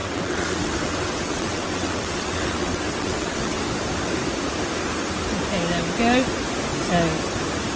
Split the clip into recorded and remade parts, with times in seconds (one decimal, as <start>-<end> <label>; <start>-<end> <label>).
0.0-3.6 remade; 3.6-7.8 recorded

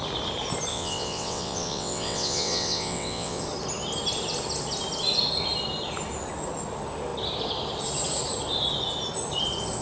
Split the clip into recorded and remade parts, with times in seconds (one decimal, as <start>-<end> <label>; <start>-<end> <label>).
0.0-0.7 recorded; 0.7-3.4 remade; 3.4-9.8 recorded

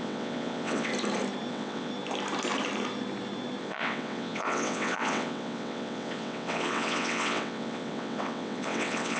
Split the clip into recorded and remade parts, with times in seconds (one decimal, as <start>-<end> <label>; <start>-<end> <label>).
0.0-0.9 remade; 0.9-1.5 recorded; 1.5-1.9 remade; 1.9-3.6 recorded; 3.6-9.2 remade

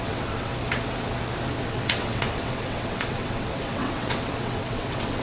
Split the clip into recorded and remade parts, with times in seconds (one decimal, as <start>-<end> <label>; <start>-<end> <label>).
0.0-0.5 remade; 0.5-1.6 recorded; 1.6-5.2 remade

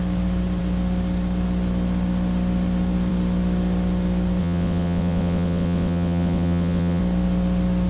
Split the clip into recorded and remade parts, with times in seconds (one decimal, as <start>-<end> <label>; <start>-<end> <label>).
0.0-4.4 recorded; 4.4-7.0 remade; 7.0-7.9 recorded

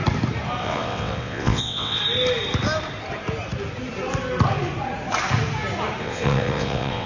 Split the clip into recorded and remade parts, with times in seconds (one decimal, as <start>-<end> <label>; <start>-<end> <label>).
0.0-0.6 recorded; 0.6-2.0 remade; 2.0-6.0 recorded; 6.0-7.1 remade